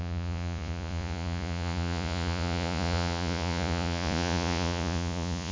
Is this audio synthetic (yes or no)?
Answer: yes